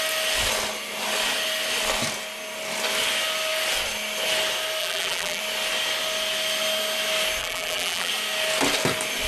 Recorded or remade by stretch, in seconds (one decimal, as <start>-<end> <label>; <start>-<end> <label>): 0.0-4.8 recorded; 4.8-5.4 remade; 5.4-7.4 recorded; 7.4-8.1 remade; 8.1-9.3 recorded

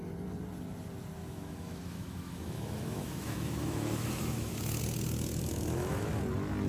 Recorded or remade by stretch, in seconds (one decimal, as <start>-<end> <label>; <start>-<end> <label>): 0.0-1.2 recorded; 1.2-4.8 remade; 4.8-5.3 recorded; 5.3-6.2 remade; 6.2-6.7 recorded

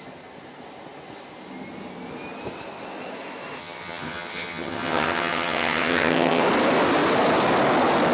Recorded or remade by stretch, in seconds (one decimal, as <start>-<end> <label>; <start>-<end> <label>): 0.0-3.6 recorded; 3.6-6.4 remade; 6.4-8.1 recorded

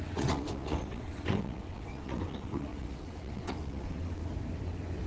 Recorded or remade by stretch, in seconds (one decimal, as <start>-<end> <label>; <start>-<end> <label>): 0.0-4.2 remade; 4.2-5.1 recorded

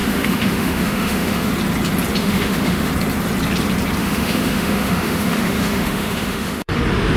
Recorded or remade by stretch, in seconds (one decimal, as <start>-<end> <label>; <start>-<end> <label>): 0.0-1.5 remade; 1.5-2.2 recorded; 2.2-2.9 remade; 2.9-4.0 recorded; 4.0-6.8 remade; 6.8-7.2 recorded

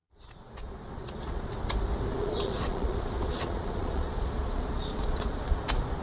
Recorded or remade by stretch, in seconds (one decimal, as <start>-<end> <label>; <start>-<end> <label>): 0.0-1.5 remade; 1.5-2.1 recorded; 2.1-5.6 remade; 5.6-6.0 recorded

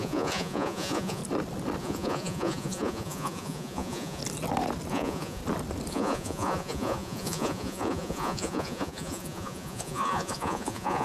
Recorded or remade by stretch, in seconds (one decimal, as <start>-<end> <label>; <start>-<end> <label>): 0.0-1.2 remade; 1.2-1.8 recorded; 1.8-4.2 remade; 4.2-4.9 recorded; 4.9-5.4 remade; 5.4-5.9 recorded; 5.9-11.0 remade